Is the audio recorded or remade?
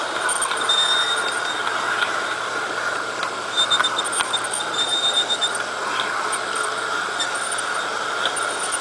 recorded